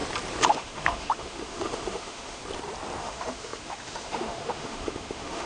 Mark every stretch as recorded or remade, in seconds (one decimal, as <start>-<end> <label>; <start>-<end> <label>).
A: 0.0-0.5 recorded; 0.5-2.4 remade; 2.4-3.0 recorded; 3.0-5.5 remade